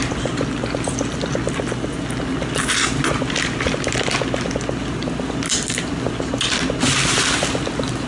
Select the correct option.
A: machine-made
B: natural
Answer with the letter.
B